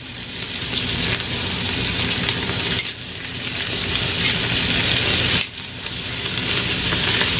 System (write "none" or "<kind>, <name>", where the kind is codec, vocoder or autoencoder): none